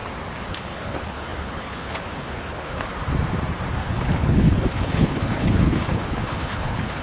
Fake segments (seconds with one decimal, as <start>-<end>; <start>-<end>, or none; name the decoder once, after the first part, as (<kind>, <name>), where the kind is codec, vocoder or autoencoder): 0.5-2.9 (codec, HILCodec); 3.7-7.0